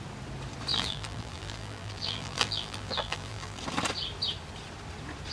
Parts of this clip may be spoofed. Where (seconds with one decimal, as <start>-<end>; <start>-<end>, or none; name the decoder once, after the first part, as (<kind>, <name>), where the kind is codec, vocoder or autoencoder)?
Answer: 0.7-3.6 (vocoder, BigVGAN v2)